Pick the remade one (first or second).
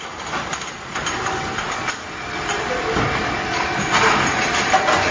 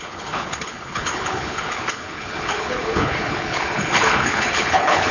second